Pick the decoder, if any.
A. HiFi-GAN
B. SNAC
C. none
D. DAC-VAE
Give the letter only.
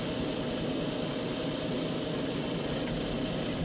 C